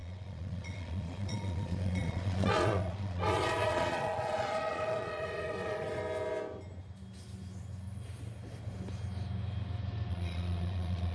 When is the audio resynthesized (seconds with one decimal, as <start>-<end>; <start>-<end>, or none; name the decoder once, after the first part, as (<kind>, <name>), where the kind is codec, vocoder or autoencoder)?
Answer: 0.0-6.0 (vocoder, Vocos); 10.1-11.1